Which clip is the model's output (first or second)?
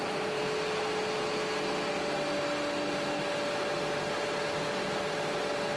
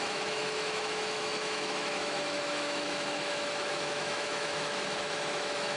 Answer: second